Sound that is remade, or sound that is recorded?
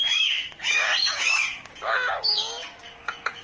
remade